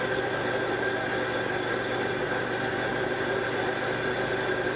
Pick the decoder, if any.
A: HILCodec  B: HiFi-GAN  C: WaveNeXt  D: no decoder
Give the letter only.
D